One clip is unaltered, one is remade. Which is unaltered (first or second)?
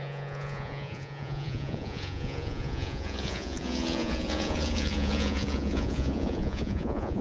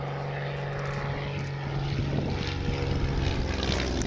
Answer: second